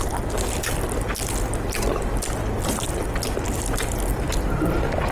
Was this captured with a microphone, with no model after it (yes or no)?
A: yes